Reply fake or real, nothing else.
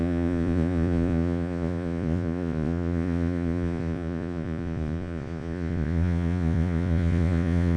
fake